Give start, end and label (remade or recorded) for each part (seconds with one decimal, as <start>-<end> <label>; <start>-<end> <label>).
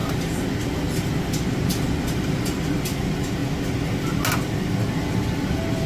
0.0-5.9 recorded